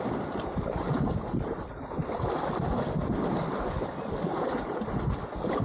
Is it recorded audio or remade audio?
recorded